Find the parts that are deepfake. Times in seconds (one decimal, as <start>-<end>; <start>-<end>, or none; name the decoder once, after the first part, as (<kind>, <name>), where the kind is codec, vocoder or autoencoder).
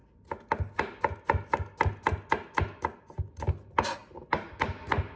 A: none